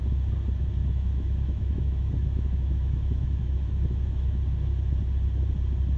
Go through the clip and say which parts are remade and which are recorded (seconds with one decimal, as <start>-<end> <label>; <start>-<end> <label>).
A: 0.0-0.8 recorded; 0.8-4.4 remade; 4.4-6.0 recorded